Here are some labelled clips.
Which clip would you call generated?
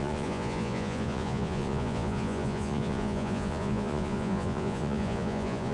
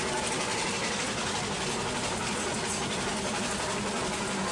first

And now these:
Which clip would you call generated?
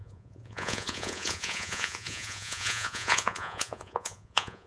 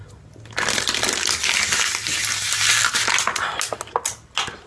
first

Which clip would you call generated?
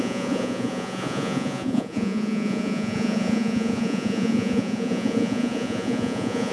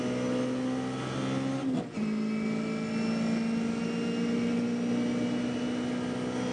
first